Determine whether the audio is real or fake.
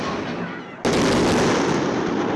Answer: real